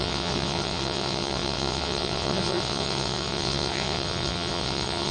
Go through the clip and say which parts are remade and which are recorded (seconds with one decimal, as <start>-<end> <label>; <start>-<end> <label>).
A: 0.0-5.1 remade